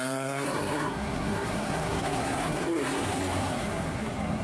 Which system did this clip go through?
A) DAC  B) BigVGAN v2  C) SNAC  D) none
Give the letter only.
C